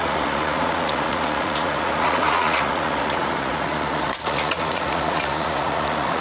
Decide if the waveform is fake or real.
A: fake